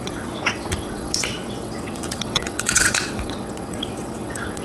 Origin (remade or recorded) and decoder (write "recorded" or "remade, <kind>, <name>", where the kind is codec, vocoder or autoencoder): remade, vocoder, WaveNeXt